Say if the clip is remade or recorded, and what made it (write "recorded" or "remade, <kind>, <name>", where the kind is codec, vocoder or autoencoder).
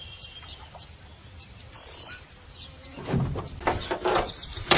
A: recorded